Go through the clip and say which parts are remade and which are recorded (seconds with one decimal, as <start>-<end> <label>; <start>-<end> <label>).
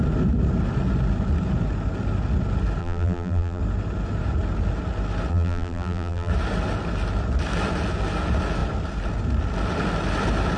0.0-2.8 recorded; 2.8-3.6 remade; 3.6-5.3 recorded; 5.3-6.3 remade; 6.3-10.6 recorded